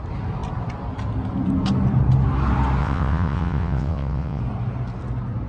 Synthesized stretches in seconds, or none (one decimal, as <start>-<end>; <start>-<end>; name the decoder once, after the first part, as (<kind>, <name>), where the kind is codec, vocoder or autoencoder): 2.8-4.4 (vocoder, WaveNeXt)